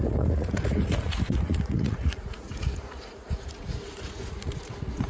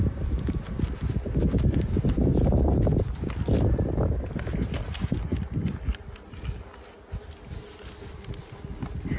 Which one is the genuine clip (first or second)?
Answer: second